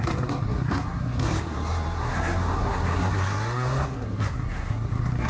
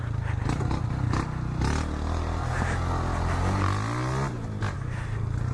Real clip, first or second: second